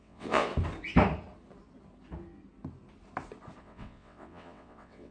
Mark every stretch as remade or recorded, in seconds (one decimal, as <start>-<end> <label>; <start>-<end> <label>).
0.0-0.5 remade; 0.5-3.6 recorded; 3.6-5.1 remade